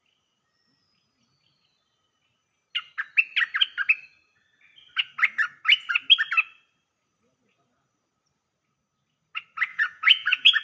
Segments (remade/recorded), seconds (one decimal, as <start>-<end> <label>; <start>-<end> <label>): 0.0-9.7 recorded; 9.7-10.6 remade